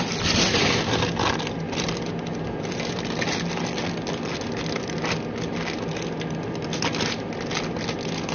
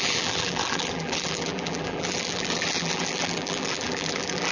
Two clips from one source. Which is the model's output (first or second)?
second